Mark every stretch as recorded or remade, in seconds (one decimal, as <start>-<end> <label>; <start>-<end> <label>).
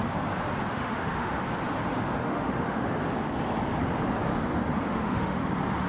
0.0-0.7 recorded; 0.7-1.4 remade; 1.4-2.2 recorded; 2.2-2.9 remade; 2.9-4.9 recorded; 4.9-5.4 remade; 5.4-5.9 recorded